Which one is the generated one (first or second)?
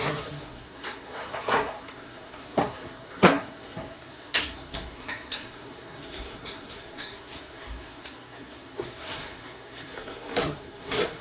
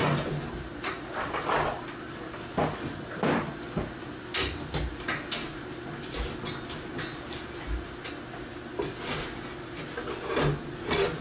first